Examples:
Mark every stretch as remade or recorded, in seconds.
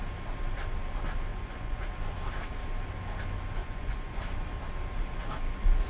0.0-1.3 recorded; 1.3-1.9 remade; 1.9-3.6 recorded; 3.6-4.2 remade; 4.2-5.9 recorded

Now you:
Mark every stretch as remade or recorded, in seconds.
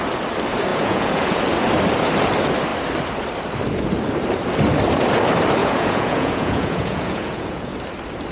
0.0-0.7 recorded; 0.7-1.4 remade; 1.4-5.6 recorded; 5.6-7.7 remade; 7.7-8.3 recorded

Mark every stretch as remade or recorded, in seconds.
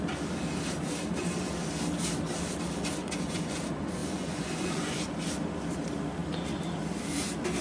0.0-3.0 recorded; 3.0-3.6 remade; 3.6-4.0 recorded; 4.0-5.1 remade; 5.1-7.6 recorded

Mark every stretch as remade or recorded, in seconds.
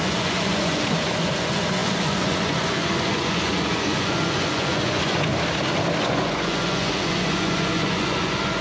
0.0-5.3 remade; 5.3-6.0 recorded; 6.0-8.6 remade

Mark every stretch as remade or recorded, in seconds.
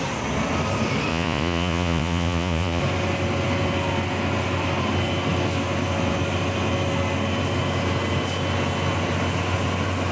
0.0-1.1 recorded; 1.1-2.8 remade; 2.8-10.1 recorded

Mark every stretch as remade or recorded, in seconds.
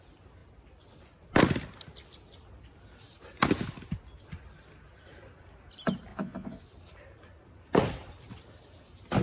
0.0-6.1 recorded; 6.1-6.6 remade; 6.6-9.2 recorded